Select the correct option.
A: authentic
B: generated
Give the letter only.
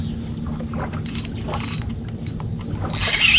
A